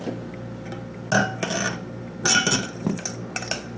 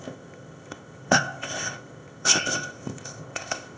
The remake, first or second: second